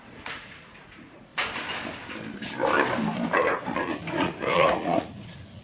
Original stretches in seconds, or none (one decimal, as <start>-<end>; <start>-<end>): 1.3-4.1